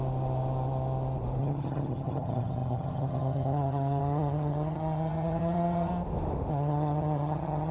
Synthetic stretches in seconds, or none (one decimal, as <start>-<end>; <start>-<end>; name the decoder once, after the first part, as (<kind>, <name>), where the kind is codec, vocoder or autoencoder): 1.4-5.9 (vocoder, HiFi-GAN); 6.5-7.7